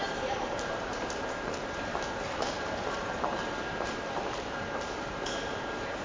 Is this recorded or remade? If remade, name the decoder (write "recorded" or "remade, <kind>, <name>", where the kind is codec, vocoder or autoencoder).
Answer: remade, vocoder, BigVGAN v2